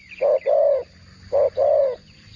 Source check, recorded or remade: recorded